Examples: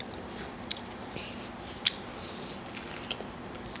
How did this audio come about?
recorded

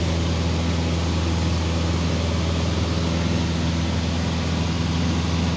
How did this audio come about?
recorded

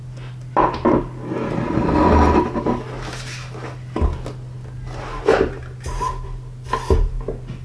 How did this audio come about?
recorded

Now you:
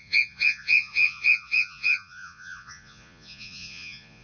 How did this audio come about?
remade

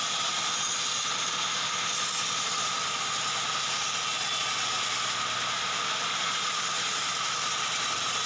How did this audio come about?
recorded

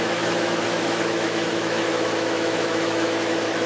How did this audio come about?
remade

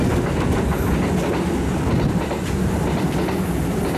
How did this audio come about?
recorded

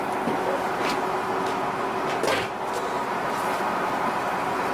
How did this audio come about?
recorded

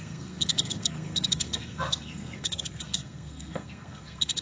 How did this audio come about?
remade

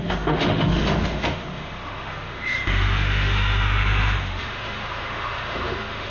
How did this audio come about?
remade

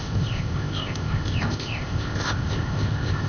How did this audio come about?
remade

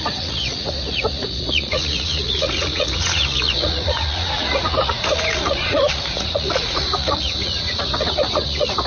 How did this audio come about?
remade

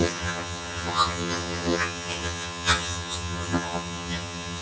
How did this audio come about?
remade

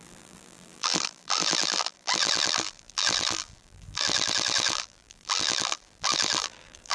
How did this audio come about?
remade